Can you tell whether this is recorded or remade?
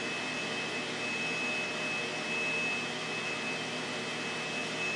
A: recorded